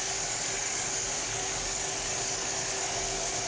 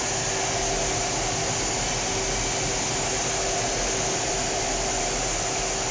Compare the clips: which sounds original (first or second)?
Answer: second